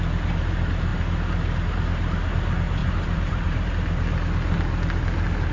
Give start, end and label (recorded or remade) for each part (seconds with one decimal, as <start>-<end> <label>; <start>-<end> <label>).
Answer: 0.0-2.8 recorded; 2.8-3.7 remade; 3.7-5.5 recorded